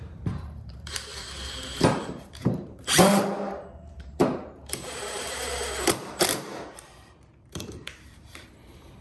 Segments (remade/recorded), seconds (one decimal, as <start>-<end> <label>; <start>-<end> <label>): 0.0-9.0 remade